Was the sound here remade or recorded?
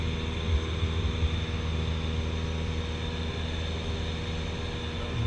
recorded